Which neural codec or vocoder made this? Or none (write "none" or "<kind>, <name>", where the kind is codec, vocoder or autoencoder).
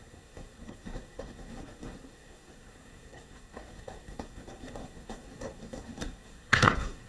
codec, SNAC